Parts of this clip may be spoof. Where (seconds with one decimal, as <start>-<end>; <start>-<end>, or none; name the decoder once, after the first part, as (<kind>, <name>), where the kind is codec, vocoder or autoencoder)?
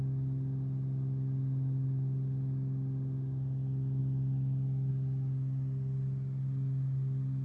none